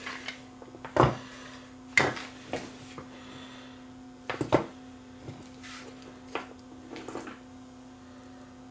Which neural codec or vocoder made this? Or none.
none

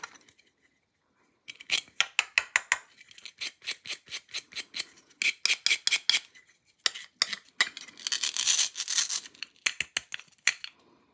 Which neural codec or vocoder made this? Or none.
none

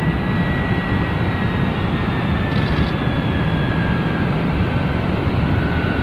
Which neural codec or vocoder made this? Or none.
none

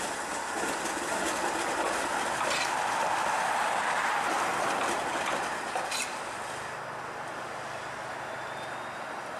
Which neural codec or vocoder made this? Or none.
none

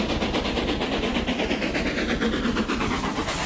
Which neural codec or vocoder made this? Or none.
none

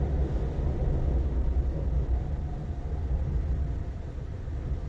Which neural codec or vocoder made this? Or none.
none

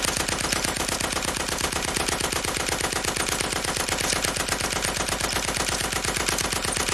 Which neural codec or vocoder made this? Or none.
none